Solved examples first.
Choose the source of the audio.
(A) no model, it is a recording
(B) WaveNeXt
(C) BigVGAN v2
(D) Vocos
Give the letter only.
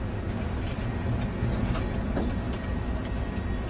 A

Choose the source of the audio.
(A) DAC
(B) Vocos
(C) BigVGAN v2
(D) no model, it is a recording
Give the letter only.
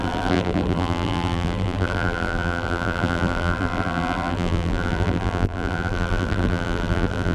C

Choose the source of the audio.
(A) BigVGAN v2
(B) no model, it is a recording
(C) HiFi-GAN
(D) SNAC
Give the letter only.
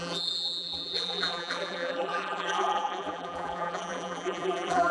A